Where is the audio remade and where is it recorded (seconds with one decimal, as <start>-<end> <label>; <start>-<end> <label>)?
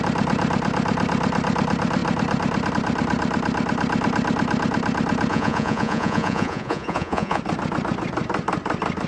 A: 0.0-5.3 recorded; 5.3-7.4 remade; 7.4-9.1 recorded